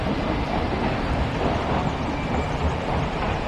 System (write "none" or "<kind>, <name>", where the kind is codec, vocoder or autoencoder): none